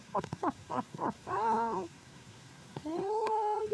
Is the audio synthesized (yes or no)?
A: yes